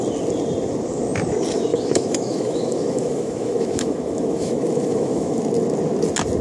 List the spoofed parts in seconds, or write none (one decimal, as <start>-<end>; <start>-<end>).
1.7-5.4